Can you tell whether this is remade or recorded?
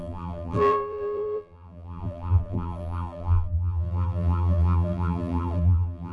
remade